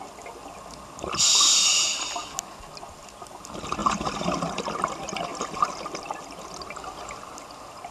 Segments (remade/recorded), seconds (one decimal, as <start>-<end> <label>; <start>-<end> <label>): 0.0-3.8 recorded; 3.8-4.4 remade; 4.4-5.3 recorded; 5.3-5.8 remade; 5.8-7.9 recorded